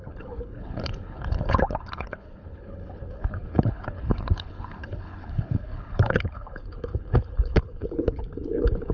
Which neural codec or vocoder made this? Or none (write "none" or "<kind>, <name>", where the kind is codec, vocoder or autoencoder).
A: codec, HILCodec